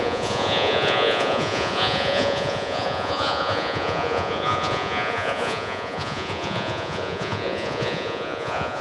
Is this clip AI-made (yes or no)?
yes